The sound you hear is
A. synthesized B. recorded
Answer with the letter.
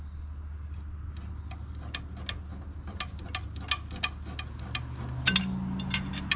B